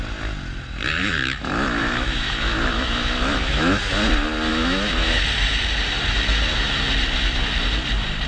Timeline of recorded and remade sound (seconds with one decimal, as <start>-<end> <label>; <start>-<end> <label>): 0.0-1.0 recorded; 1.0-3.8 remade; 3.8-4.5 recorded; 4.5-5.2 remade; 5.2-8.3 recorded